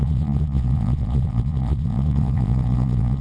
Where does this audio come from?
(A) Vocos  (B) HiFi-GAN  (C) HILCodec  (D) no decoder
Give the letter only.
A